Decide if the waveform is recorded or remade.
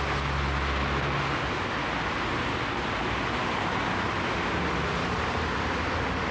recorded